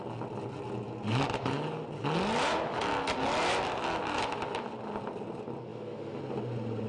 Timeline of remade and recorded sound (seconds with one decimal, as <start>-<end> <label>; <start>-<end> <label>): 0.0-5.7 recorded; 5.7-6.2 remade; 6.2-6.9 recorded